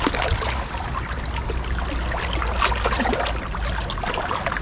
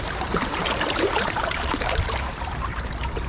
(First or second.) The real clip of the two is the first